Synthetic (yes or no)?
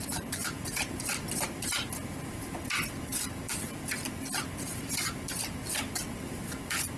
no